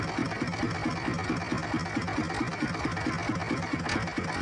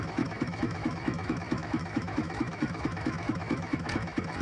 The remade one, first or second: second